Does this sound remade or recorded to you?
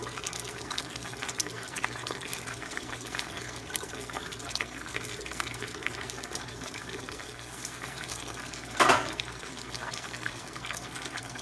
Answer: remade